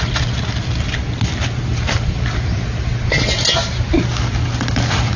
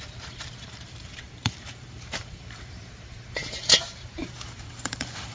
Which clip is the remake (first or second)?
second